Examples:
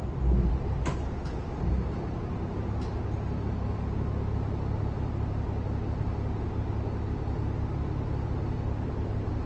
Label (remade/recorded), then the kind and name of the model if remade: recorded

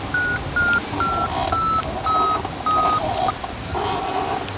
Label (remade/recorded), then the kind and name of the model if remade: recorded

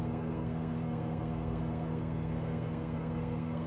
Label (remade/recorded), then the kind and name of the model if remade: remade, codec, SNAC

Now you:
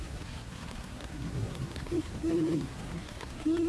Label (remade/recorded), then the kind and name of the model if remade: remade, codec, SNAC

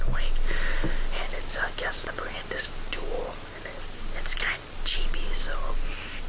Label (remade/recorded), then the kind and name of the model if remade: recorded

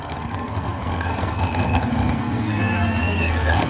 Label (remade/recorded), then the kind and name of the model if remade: remade, codec, SNAC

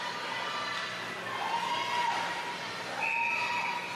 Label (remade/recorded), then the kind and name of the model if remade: recorded